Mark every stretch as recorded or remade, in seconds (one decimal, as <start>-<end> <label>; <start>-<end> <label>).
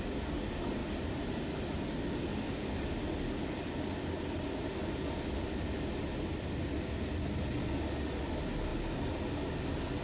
0.0-10.0 recorded